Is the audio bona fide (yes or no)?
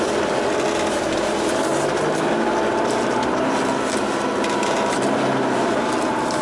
yes